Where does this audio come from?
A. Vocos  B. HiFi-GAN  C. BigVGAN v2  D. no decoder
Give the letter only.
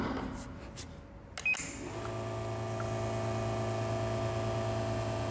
D